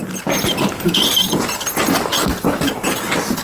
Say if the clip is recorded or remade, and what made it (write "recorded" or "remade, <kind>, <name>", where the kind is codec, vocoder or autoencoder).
recorded